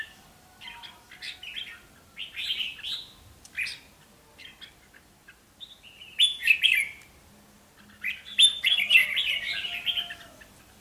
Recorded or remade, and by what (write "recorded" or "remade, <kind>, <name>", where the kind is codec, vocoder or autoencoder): recorded